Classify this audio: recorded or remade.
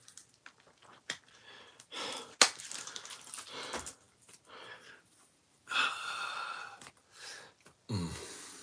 recorded